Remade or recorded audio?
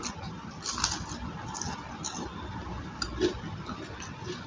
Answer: recorded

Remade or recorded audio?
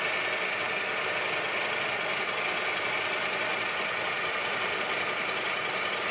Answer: recorded